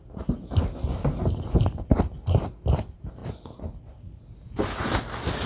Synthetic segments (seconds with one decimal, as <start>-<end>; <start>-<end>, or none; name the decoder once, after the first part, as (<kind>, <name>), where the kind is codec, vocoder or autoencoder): none